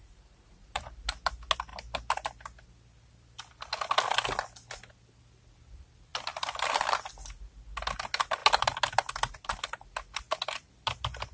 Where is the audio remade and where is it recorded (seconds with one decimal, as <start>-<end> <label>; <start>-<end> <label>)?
0.0-0.8 remade; 0.8-11.3 recorded